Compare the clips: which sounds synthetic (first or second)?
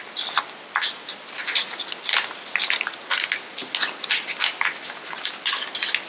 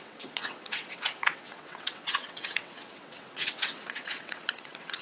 second